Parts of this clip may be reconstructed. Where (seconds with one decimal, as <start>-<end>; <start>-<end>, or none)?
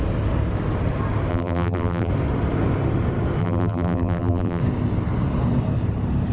1.3-2.1; 3.4-4.6